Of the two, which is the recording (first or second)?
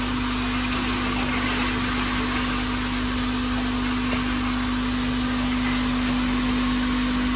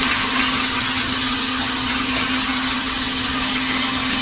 first